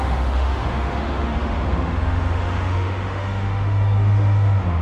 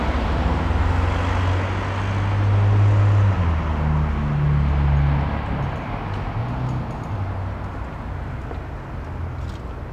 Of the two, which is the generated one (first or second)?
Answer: first